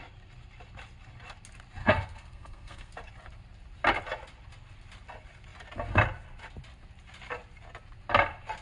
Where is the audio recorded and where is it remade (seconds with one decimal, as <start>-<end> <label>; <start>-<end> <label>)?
0.0-1.8 recorded; 1.8-2.9 remade; 2.9-8.6 recorded